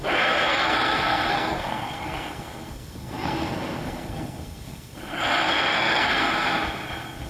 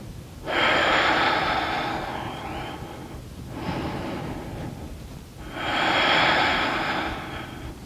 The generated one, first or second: first